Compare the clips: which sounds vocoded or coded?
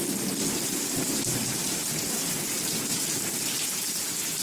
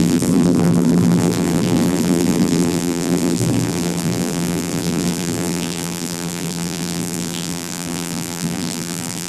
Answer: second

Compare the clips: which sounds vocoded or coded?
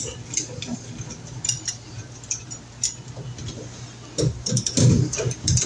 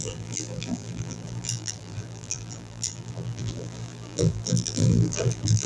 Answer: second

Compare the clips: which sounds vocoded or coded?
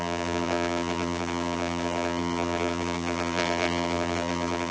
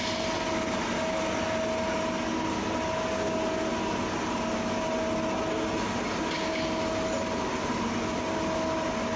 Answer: first